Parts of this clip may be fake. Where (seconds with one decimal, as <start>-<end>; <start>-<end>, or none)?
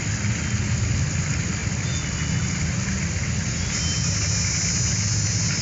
none